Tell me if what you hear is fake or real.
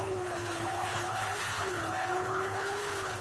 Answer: fake